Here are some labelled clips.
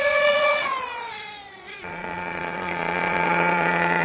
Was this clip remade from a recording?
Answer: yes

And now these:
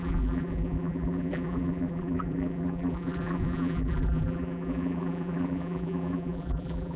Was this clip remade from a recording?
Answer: yes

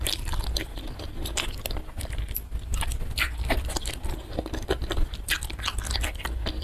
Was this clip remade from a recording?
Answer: no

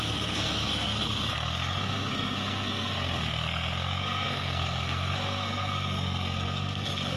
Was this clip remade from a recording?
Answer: yes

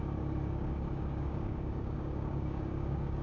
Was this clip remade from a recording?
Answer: yes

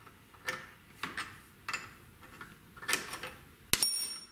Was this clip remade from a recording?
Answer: no